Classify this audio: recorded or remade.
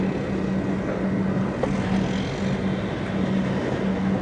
recorded